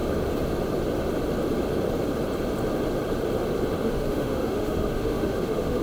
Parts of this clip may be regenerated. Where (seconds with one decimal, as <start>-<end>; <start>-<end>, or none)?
3.8-5.8

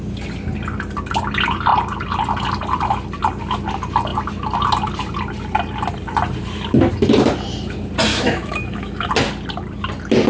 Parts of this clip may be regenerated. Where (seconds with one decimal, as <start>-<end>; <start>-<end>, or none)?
8.1-9.1

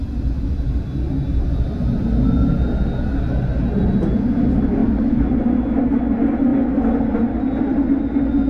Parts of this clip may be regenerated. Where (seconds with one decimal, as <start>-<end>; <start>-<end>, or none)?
4.8-5.3

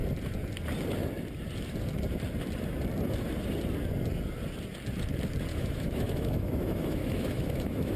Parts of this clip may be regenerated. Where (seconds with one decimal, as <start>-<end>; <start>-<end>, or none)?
5.5-8.0

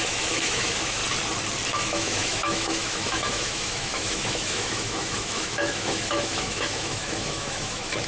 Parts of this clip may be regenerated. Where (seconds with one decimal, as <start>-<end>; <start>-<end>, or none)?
0.0-1.0; 1.7-8.1

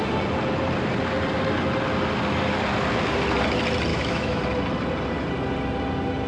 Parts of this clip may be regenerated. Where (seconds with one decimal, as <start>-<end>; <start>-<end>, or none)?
3.9-4.4

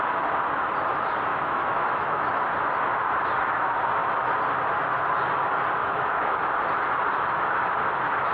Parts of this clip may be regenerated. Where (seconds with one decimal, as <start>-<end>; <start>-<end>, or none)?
1.3-2.4; 5.8-6.4

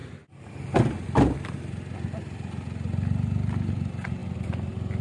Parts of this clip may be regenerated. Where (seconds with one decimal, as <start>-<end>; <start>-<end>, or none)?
none